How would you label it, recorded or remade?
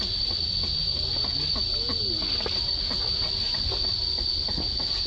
recorded